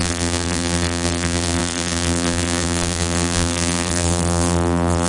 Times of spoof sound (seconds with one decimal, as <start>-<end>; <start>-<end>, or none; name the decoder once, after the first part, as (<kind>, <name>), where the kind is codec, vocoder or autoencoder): 0.0-5.1 (vocoder, BigVGAN v2)